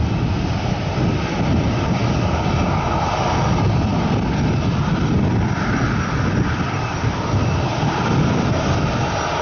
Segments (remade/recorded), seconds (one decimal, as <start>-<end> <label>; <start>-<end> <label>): 0.0-3.9 recorded; 3.9-8.1 remade; 8.1-9.4 recorded